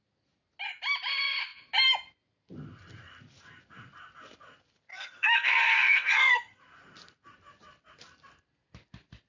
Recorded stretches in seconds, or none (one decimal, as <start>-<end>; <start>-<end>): 0.0-4.9; 6.6-9.3